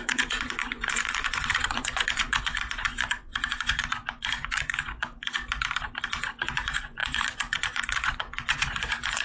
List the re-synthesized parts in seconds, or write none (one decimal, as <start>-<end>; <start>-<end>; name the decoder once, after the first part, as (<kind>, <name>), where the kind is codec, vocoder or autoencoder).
0.0-5.4 (vocoder, Vocos); 6.1-9.2